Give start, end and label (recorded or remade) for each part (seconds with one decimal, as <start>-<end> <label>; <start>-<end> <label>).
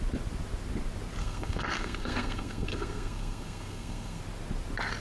0.0-1.2 recorded; 1.2-4.2 remade; 4.2-5.0 recorded